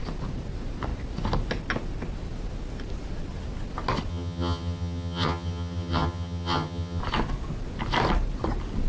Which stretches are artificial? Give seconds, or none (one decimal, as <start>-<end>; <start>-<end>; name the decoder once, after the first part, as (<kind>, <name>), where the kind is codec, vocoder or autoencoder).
4.1-7.0 (vocoder, HiFi-GAN)

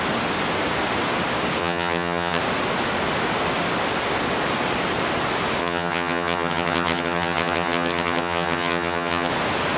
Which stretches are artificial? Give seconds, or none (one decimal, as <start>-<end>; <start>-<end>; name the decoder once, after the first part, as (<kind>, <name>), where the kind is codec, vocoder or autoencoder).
1.6-2.4 (vocoder, HiFi-GAN); 5.6-9.3

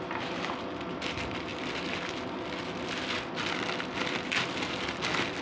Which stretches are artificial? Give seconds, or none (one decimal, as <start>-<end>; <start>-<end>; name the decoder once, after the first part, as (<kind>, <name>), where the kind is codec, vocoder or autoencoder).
none